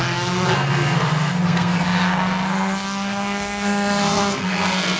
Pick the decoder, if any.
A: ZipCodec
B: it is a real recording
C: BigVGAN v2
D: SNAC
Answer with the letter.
D